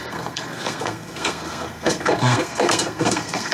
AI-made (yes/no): yes